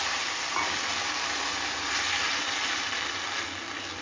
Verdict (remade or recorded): recorded